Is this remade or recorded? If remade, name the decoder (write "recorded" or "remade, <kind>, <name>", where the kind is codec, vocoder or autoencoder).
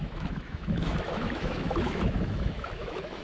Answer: remade, autoencoder, DAC-VAE